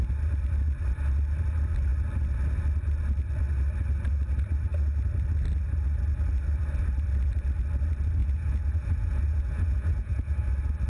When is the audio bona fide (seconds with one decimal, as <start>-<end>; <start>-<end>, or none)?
0.0-8.2; 10.5-10.9